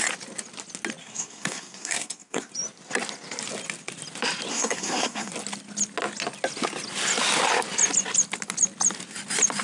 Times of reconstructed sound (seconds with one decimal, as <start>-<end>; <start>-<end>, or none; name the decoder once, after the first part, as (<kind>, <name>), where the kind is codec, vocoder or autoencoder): 1.0-2.5 (codec, SNAC); 4.5-5.3

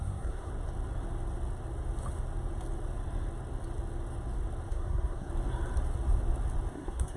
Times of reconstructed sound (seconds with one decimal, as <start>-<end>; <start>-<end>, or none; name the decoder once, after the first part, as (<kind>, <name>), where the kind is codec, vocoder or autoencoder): 0.0-0.5 (codec, SNAC); 4.7-5.3; 6.7-7.2

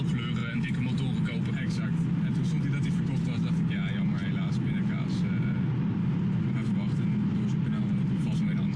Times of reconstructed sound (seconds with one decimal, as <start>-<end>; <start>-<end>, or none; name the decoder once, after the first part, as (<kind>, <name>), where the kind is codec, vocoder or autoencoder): none

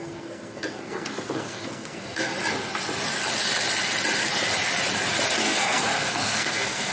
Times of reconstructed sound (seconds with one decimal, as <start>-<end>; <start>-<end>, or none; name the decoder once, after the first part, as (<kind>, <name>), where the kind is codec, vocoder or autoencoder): 0.0-2.3 (codec, SNAC); 5.4-6.9

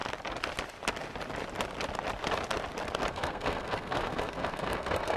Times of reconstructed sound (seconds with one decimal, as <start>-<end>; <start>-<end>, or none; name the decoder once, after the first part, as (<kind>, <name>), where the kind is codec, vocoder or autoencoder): 3.1-5.2 (codec, SNAC)